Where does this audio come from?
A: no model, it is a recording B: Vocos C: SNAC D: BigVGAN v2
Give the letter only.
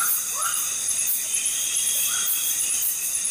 D